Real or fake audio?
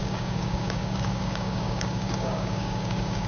fake